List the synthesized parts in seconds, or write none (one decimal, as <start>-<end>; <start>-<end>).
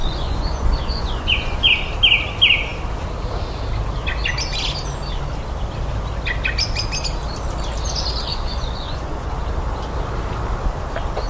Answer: 0.0-1.7; 8.3-9.3